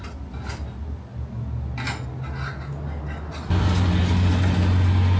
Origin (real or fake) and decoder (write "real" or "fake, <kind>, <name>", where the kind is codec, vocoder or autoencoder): real